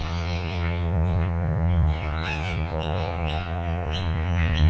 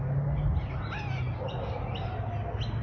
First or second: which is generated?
first